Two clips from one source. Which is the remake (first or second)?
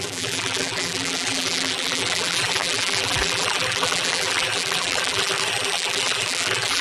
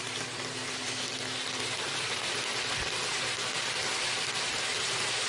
first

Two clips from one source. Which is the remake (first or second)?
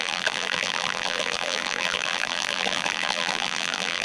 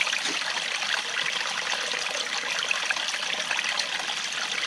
first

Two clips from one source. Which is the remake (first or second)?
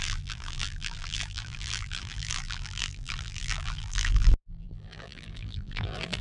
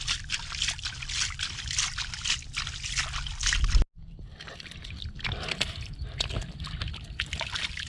first